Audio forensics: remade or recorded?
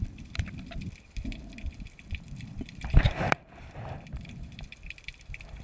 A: remade